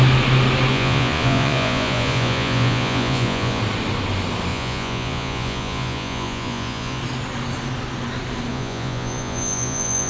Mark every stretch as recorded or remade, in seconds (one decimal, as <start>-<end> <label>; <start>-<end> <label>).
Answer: 0.0-0.7 recorded; 0.7-3.6 remade; 3.6-4.5 recorded; 4.5-7.0 remade; 7.0-8.5 recorded; 8.5-10.1 remade